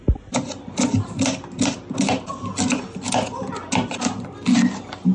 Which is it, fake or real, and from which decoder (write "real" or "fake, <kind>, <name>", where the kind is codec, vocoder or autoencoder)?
real